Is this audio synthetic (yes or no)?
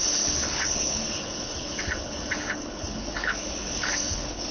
yes